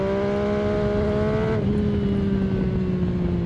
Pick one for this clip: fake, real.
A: real